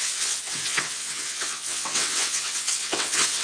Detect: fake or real fake